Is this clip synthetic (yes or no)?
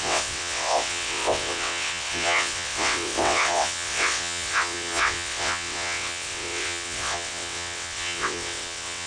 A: yes